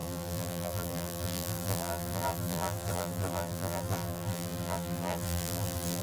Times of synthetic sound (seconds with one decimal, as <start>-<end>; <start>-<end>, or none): 0.0-6.0